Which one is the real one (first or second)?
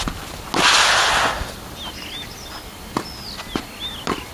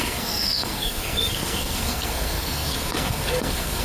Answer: first